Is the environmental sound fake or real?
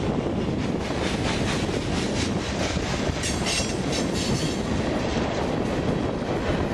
real